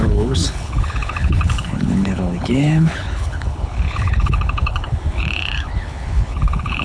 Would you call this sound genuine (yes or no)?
no